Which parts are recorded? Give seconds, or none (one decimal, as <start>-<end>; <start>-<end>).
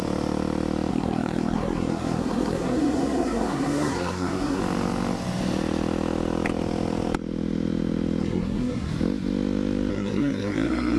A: 0.0-0.9; 4.6-8.2; 8.9-9.9